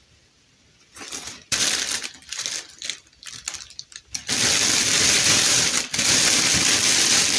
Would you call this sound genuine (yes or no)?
no